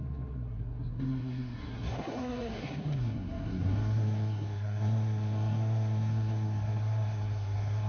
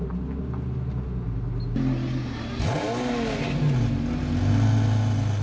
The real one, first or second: second